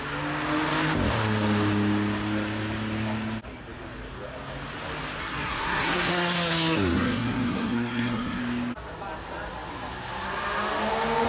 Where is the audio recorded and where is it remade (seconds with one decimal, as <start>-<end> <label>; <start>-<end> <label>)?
0.0-5.2 recorded; 5.2-8.4 remade; 8.4-11.3 recorded